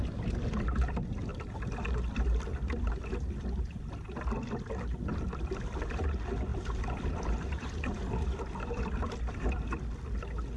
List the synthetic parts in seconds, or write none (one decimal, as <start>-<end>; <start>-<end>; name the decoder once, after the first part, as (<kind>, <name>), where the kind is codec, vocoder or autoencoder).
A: 6.5-9.5 (vocoder, BigVGAN v2)